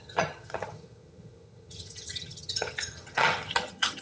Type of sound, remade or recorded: remade